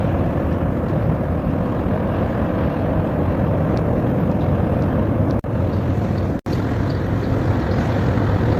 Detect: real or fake real